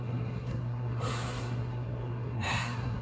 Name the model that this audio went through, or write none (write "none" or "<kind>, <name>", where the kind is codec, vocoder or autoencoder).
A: codec, SNAC